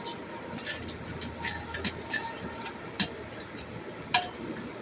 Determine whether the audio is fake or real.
real